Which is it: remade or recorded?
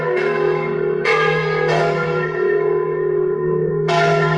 remade